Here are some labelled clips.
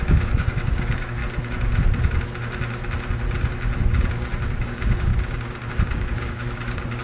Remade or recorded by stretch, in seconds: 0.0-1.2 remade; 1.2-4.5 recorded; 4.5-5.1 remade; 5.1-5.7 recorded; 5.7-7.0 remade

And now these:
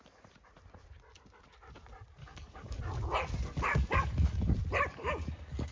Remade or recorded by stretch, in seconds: 0.0-2.2 recorded; 2.2-2.8 remade; 2.8-3.7 recorded; 3.7-4.5 remade; 4.5-4.9 recorded; 4.9-5.7 remade